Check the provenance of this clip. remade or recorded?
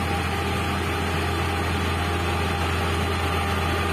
recorded